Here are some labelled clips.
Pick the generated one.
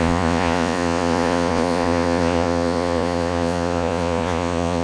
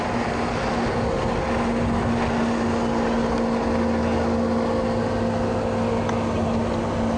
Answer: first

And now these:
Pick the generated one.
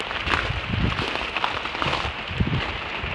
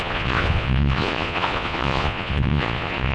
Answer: second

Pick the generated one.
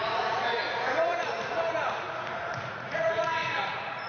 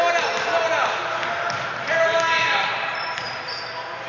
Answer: first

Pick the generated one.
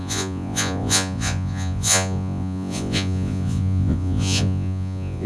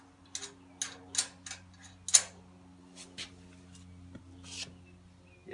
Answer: first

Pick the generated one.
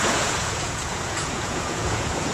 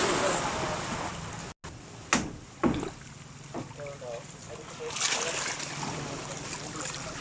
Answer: first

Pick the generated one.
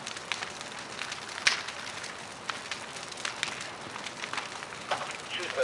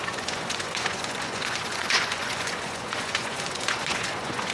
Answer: second